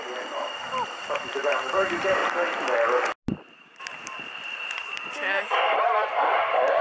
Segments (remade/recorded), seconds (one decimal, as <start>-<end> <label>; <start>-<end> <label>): 0.0-2.2 remade; 2.2-3.8 recorded; 3.8-6.8 remade